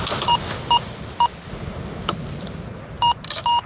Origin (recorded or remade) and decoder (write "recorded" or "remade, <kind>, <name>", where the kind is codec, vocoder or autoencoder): recorded